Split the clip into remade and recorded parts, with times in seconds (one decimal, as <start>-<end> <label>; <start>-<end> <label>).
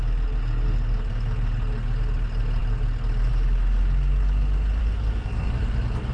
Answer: 0.0-4.8 recorded; 4.8-5.5 remade; 5.5-6.1 recorded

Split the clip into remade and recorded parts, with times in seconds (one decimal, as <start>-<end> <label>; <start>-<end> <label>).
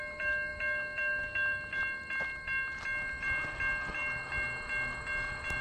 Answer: 0.0-5.6 recorded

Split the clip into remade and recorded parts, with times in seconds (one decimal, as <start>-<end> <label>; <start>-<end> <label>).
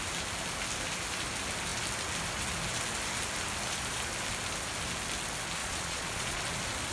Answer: 0.0-5.6 recorded; 5.6-6.4 remade; 6.4-6.9 recorded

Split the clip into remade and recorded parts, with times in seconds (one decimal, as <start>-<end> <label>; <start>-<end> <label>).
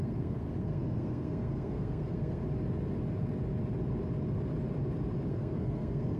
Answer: 0.0-2.4 remade; 2.4-5.3 recorded; 5.3-6.2 remade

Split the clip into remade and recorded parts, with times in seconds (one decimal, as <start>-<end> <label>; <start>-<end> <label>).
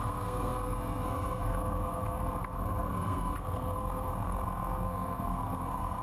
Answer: 0.0-6.0 remade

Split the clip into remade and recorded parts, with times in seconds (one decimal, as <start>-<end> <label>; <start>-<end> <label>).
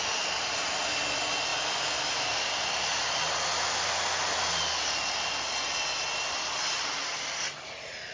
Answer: 0.0-8.1 recorded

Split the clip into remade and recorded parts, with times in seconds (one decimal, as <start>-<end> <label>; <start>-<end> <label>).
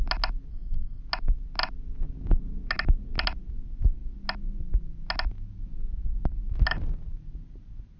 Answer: 0.0-0.5 recorded; 0.5-1.0 remade; 1.0-8.0 recorded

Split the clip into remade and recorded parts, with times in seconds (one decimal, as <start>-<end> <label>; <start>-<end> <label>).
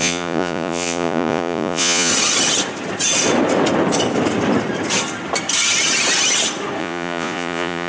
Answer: 0.0-2.1 remade; 2.1-6.8 recorded; 6.8-7.9 remade